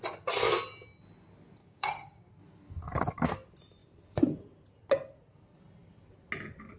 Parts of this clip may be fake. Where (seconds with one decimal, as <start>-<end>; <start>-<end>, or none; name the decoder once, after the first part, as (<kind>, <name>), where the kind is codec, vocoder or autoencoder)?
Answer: 1.6-2.3 (codec, DAC)